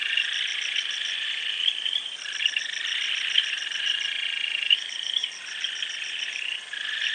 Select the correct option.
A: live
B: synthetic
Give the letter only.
A